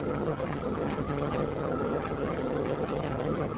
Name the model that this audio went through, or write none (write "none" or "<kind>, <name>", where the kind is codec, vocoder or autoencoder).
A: vocoder, HiFi-GAN